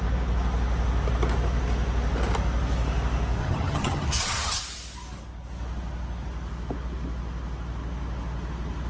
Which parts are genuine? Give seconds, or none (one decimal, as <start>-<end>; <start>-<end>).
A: 0.0-3.4; 4.6-8.9